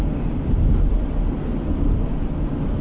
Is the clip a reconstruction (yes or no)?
no